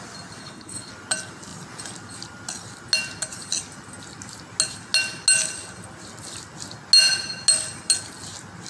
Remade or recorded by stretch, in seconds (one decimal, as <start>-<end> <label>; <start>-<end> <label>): 0.0-0.4 recorded; 0.4-0.9 remade; 0.9-8.7 recorded